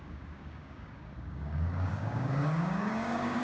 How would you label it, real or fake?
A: fake